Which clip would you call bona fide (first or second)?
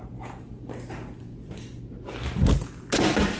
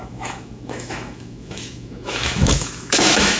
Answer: first